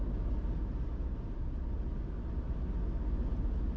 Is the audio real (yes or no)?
yes